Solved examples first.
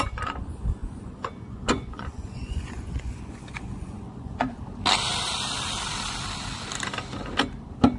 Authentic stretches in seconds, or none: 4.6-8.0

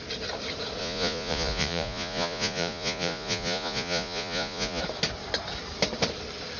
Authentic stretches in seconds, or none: 0.0-0.8; 4.8-6.6

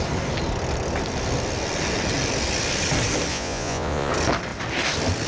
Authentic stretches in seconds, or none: 0.0-3.3; 4.1-5.3

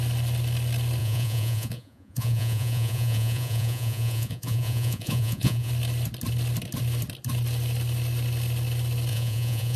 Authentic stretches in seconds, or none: 0.0-1.0; 5.7-9.1

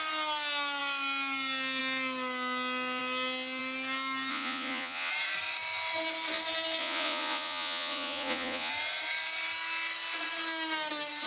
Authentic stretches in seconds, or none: 0.0-4.3; 5.1-6.8; 8.7-11.3

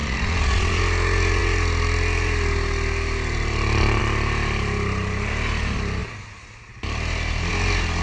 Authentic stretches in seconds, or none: 0.8-8.0

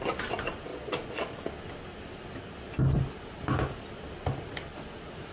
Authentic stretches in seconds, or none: 0.0-0.7; 1.3-5.3